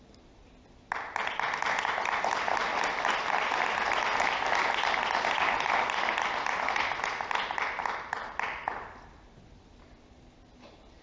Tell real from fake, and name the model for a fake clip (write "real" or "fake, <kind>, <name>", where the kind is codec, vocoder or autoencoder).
real